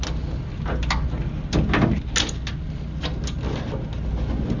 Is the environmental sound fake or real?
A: real